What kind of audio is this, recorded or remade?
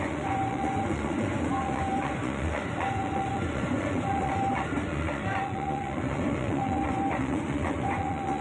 remade